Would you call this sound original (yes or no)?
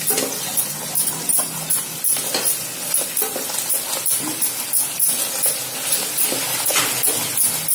yes